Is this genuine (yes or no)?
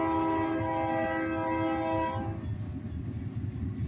yes